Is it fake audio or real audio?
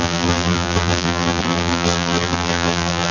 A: fake